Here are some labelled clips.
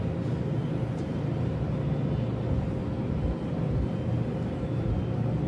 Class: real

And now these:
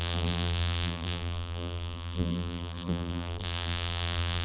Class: fake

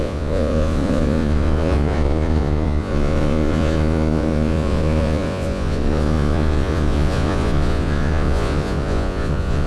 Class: fake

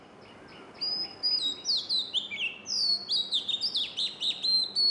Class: real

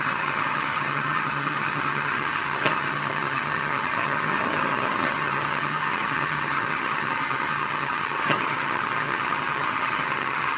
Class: fake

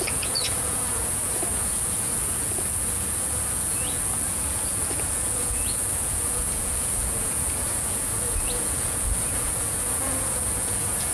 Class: fake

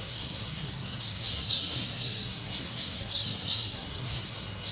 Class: fake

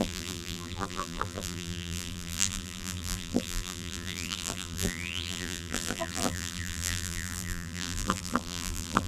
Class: fake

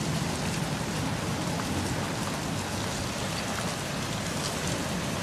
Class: real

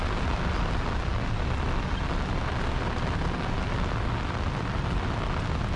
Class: real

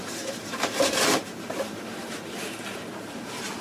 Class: fake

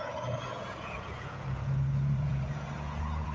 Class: fake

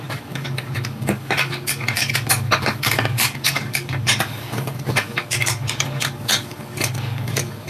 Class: fake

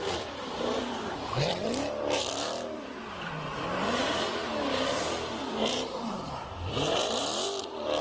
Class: fake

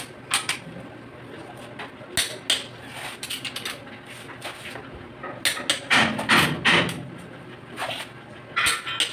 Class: real